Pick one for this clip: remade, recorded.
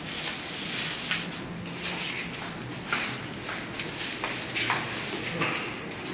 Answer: recorded